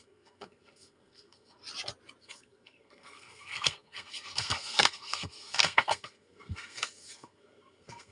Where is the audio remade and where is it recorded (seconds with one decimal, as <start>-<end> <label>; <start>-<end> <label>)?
0.0-1.6 remade; 1.6-2.2 recorded; 2.2-8.1 remade